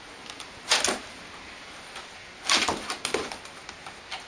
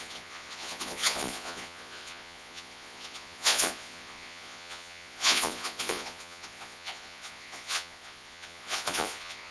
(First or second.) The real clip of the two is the first